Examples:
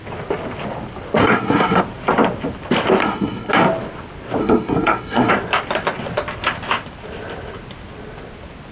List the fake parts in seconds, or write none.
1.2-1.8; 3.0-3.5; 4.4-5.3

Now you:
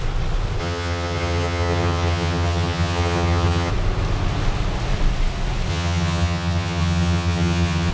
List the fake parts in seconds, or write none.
0.6-3.7; 5.7-7.9

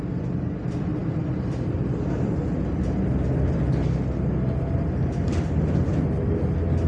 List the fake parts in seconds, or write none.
none

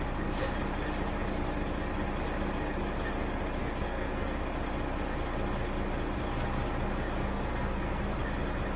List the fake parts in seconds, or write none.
3.6-4.4; 7.2-8.1

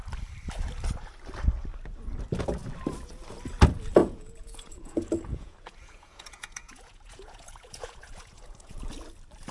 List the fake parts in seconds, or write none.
4.0-8.8